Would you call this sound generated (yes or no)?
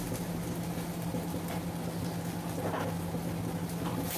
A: no